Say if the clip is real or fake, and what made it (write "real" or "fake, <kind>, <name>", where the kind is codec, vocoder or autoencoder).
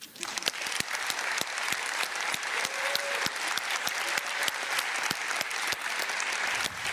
real